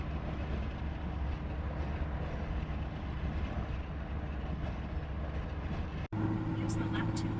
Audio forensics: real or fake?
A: real